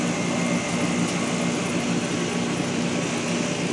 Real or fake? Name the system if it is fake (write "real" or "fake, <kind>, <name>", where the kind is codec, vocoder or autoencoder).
real